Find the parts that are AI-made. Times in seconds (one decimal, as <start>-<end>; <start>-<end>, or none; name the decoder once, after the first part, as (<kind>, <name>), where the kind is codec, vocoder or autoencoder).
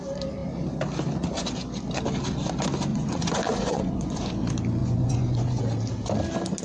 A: 2.9-4.3 (vocoder, Vocos); 4.8-5.6